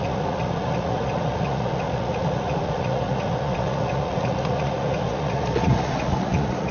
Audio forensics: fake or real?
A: fake